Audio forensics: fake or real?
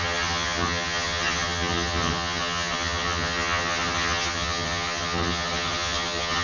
fake